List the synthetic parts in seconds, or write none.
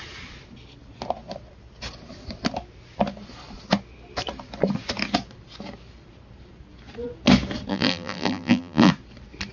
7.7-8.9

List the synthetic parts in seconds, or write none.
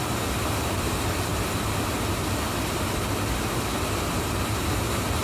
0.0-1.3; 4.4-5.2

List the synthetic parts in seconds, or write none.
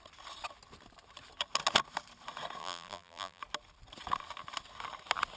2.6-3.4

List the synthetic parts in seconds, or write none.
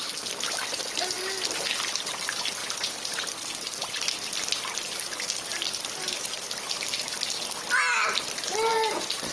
2.6-3.2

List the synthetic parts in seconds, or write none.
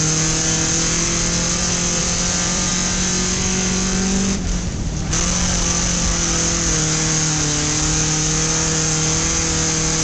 2.0-2.7